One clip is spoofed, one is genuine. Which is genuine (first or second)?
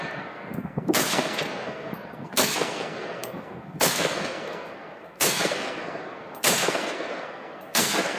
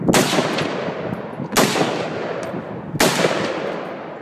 second